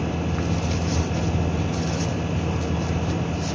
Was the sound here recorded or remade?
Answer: recorded